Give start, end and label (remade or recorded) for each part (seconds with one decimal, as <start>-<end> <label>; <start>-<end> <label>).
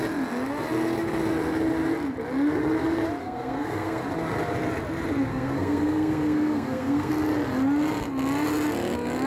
0.0-3.2 recorded; 3.2-4.0 remade; 4.0-5.3 recorded; 5.3-7.1 remade; 7.1-9.3 recorded